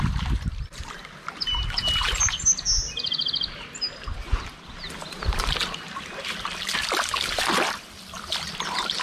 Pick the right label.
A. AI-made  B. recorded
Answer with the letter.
B